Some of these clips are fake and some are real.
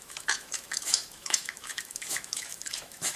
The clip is fake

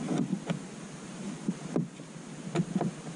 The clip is real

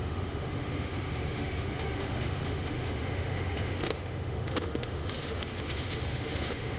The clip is fake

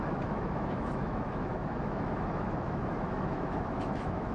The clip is fake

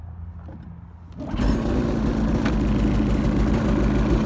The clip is real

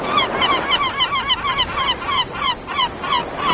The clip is real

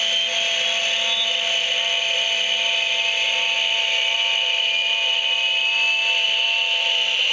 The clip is real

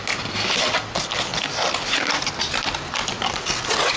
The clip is real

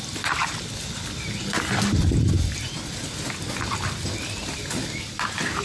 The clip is real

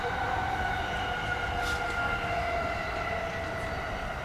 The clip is real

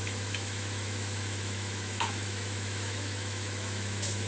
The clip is fake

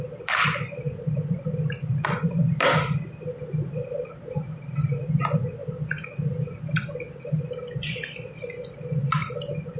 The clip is real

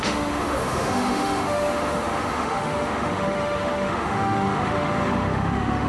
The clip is fake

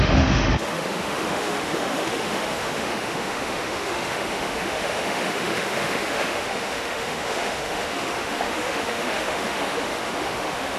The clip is fake